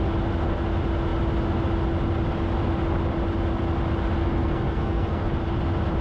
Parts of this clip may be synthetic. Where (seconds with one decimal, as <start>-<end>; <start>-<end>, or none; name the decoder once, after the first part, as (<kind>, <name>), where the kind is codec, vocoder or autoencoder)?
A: 4.2-5.3 (codec, SNAC)